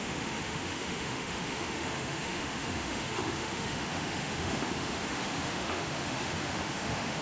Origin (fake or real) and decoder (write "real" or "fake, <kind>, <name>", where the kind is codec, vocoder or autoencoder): fake, autoencoder, DAC-VAE